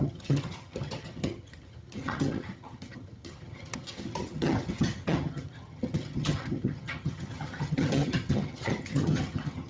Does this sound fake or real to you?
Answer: fake